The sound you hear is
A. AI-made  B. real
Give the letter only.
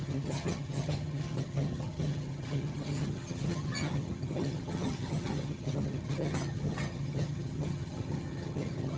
A